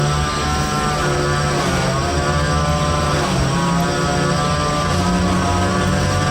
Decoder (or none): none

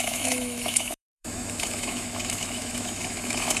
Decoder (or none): autoencoder, DAC-VAE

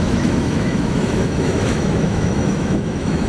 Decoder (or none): autoencoder, DAC-VAE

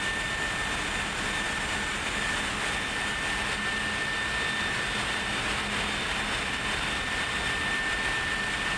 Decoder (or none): none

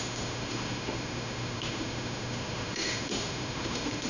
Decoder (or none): autoencoder, DAC-VAE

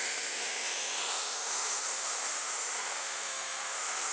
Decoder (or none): autoencoder, DAC-VAE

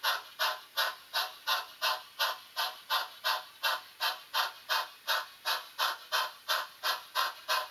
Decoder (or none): none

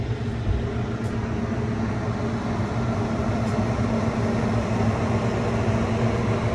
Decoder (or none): none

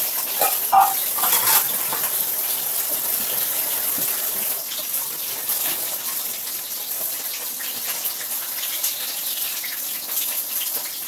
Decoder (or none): none